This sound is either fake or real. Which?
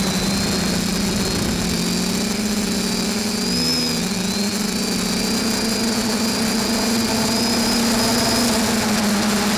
real